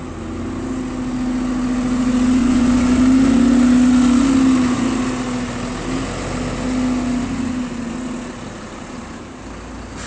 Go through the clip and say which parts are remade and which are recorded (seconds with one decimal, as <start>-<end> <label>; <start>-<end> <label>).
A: 0.0-2.4 recorded; 2.4-3.0 remade; 3.0-10.1 recorded